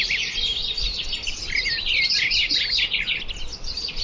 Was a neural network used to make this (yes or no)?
no